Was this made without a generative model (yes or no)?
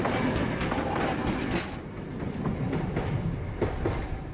yes